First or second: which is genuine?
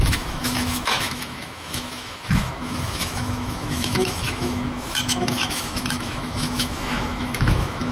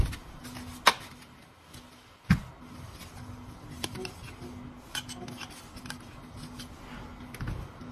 second